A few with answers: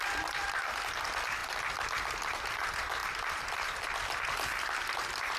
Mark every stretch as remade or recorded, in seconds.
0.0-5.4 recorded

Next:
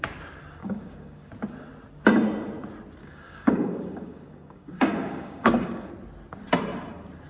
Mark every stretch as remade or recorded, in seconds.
0.0-0.6 recorded; 0.6-1.3 remade; 1.3-3.0 recorded; 3.0-5.9 remade; 5.9-7.3 recorded

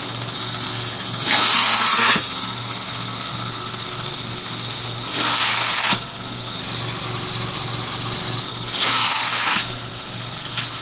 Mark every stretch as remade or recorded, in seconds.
0.0-6.6 remade; 6.6-8.4 recorded; 8.4-10.8 remade

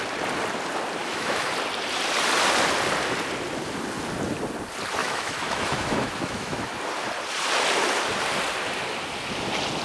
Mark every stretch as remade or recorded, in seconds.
0.0-1.0 recorded; 1.0-1.5 remade; 1.5-5.0 recorded; 5.0-6.6 remade; 6.6-9.8 recorded

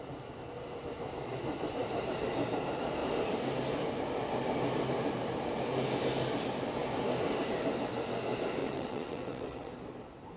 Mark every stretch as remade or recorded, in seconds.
0.0-8.6 recorded; 8.6-9.7 remade; 9.7-10.4 recorded

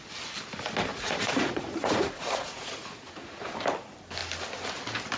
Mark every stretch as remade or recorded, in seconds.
0.0-0.9 recorded; 0.9-3.5 remade; 3.5-5.2 recorded

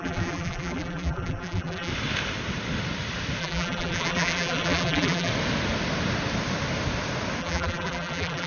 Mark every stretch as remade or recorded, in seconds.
0.0-1.9 remade; 1.9-3.4 recorded; 3.4-5.3 remade; 5.3-7.4 recorded; 7.4-8.5 remade

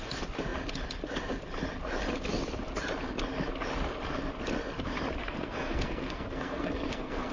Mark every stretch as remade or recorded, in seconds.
0.0-5.2 recorded; 5.2-7.3 remade